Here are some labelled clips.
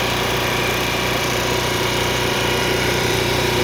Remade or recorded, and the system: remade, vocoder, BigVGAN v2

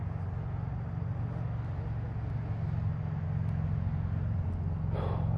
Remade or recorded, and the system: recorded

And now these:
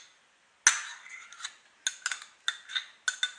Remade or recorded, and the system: recorded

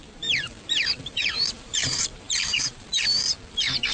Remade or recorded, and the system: remade, vocoder, BigVGAN v2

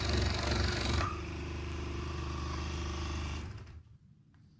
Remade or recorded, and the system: remade, vocoder, BigVGAN v2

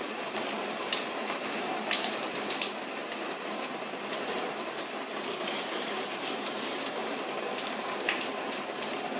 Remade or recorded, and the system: remade, vocoder, BigVGAN v2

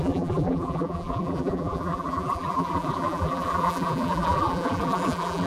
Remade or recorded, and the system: remade, vocoder, BigVGAN v2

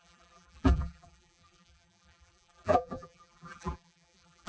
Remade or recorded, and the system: remade, vocoder, BigVGAN v2